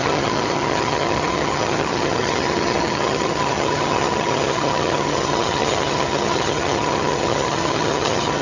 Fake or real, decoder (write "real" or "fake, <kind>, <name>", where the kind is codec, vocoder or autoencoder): fake, vocoder, HiFi-GAN